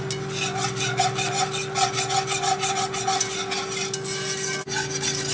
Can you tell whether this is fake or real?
real